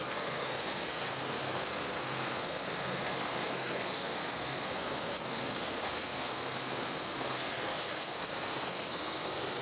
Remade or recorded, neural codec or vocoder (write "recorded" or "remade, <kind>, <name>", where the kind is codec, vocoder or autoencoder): remade, codec, SNAC